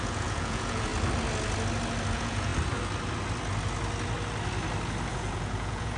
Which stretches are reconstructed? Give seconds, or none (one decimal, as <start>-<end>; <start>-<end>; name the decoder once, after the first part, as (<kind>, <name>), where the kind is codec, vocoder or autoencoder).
0.0-0.9 (vocoder, Vocos); 2.1-2.5; 5.1-6.0